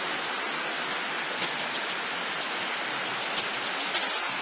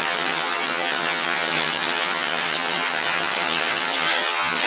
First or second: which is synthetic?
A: second